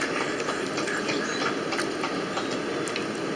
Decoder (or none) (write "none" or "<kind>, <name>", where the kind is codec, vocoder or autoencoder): none